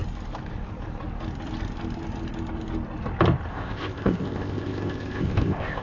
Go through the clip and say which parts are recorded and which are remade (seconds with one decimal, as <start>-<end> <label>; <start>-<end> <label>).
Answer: 0.0-3.5 recorded; 3.5-5.8 remade